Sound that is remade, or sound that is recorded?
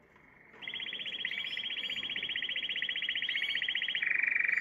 recorded